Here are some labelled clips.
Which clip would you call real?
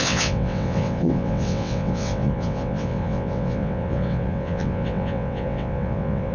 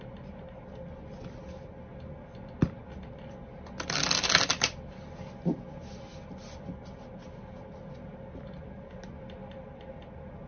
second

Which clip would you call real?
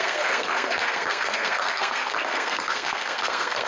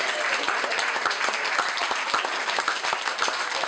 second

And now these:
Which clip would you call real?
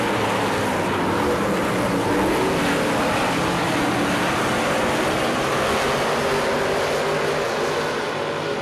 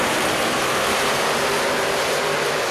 first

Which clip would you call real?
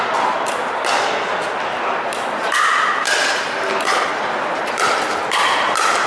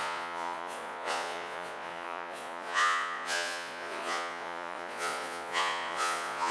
first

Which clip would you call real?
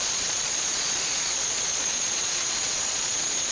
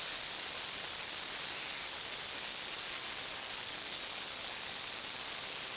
second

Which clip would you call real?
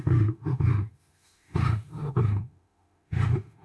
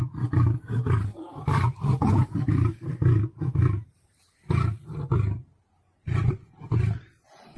second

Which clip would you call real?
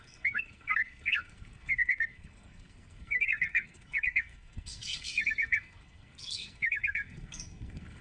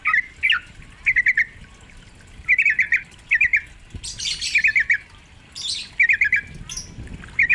second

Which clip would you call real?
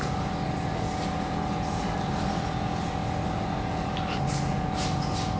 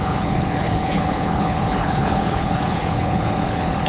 first